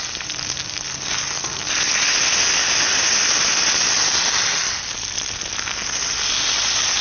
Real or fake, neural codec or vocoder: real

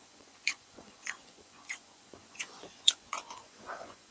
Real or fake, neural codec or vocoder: fake, vocoder, Vocos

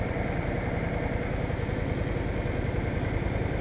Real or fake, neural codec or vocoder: real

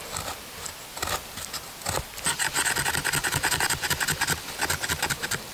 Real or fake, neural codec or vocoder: real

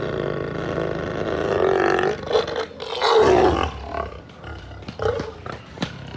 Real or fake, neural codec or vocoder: real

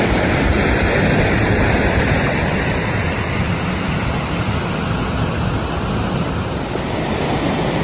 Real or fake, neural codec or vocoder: real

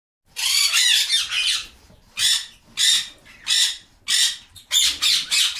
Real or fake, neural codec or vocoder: real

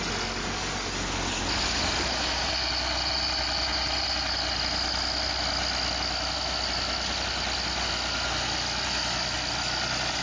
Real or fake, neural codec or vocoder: real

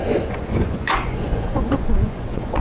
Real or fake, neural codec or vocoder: fake, vocoder, Vocos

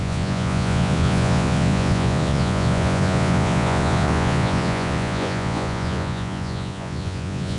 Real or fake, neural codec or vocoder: fake, vocoder, Vocos